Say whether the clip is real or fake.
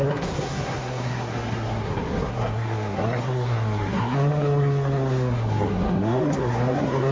fake